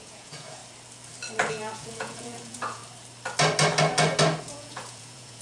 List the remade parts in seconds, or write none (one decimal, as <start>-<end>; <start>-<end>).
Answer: 0.0-0.6; 1.5-2.8; 4.4-5.4